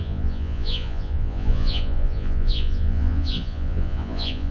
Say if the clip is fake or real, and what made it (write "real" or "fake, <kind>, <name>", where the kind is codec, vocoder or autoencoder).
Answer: fake, vocoder, Vocos